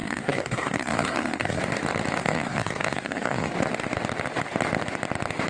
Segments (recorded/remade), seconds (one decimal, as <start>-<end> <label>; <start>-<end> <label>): 0.0-1.6 remade; 1.6-2.2 recorded; 2.2-3.5 remade; 3.5-5.5 recorded